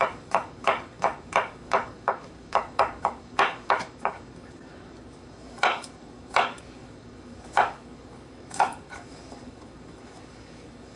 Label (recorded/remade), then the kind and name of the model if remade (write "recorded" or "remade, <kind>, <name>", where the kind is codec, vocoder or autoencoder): remade, codec, DAC